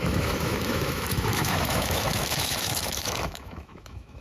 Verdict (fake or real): fake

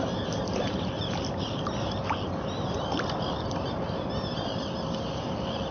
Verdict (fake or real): real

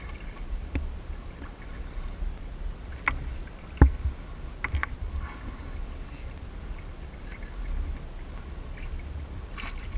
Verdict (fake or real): real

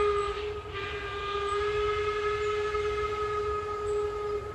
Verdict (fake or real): real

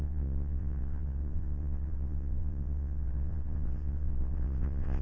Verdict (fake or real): fake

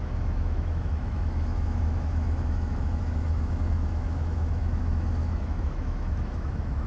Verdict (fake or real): fake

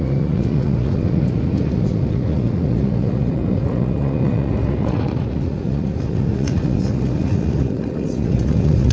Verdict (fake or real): fake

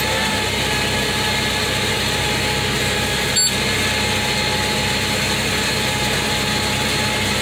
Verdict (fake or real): real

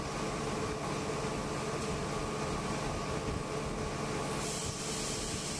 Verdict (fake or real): real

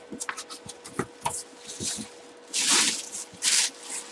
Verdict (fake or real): real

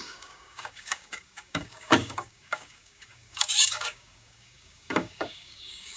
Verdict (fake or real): fake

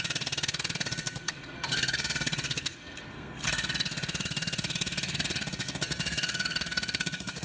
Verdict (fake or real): fake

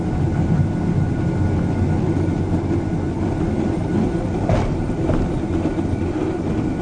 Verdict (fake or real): real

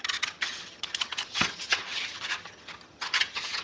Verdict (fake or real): fake